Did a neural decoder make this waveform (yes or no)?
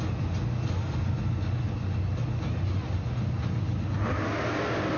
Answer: no